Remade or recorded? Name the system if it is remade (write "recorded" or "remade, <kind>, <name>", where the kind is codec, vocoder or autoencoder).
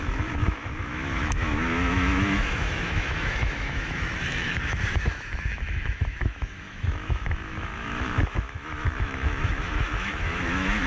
remade, autoencoder, DAC-VAE